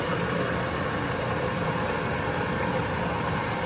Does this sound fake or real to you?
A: real